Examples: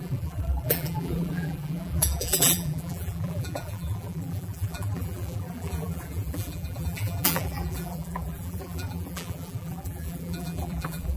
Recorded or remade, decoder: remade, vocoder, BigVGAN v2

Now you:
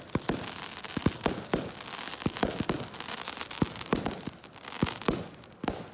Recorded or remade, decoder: recorded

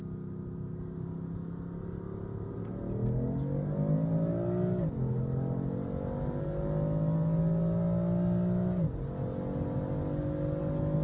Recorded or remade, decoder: recorded